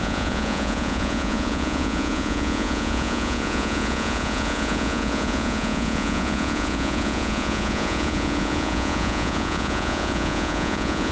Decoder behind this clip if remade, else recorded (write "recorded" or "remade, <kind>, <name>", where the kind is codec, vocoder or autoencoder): remade, vocoder, Vocos